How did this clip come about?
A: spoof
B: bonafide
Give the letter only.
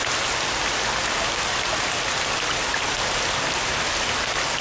B